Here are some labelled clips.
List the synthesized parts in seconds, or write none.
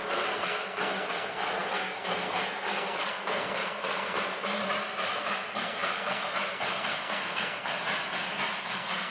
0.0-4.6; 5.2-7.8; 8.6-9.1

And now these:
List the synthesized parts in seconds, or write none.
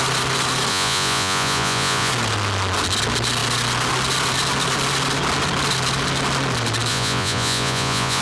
0.7-2.1; 6.9-8.2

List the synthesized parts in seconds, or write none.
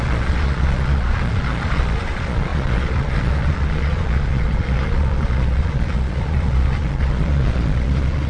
0.0-8.3